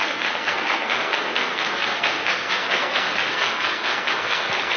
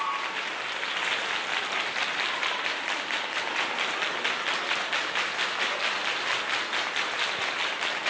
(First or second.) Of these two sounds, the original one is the second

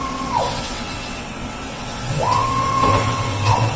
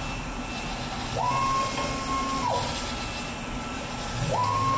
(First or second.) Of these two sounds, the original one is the second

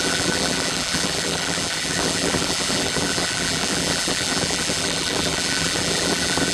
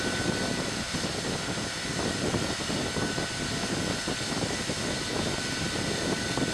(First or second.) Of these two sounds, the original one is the second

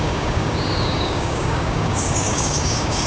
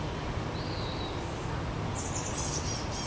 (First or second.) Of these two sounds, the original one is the second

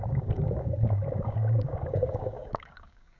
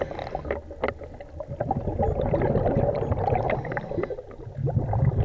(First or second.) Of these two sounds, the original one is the second